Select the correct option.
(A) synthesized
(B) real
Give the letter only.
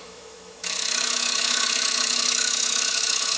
A